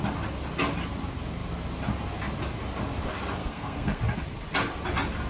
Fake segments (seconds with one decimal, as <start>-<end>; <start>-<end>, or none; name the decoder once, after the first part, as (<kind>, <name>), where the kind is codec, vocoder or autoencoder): 3.4-4.0 (codec, SNAC)